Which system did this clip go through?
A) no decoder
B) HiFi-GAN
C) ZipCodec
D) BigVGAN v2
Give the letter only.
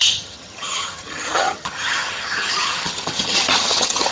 B